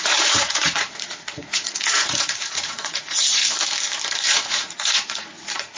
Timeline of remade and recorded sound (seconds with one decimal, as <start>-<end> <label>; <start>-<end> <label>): 0.0-3.4 remade; 3.4-4.1 recorded; 4.1-5.8 remade